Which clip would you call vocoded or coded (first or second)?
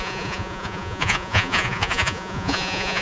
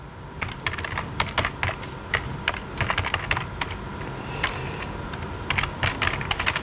first